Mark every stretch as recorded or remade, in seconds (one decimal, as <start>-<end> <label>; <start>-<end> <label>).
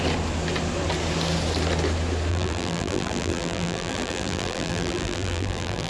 0.0-2.3 recorded; 2.3-5.9 remade